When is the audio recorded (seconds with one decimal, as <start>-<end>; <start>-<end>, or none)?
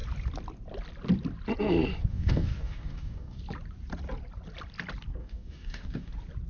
0.0-2.1; 3.4-5.2; 6.1-6.5